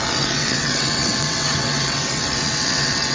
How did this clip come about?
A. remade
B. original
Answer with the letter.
A